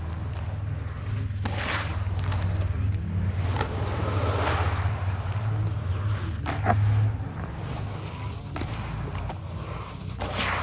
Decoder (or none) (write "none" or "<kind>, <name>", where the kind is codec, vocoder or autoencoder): none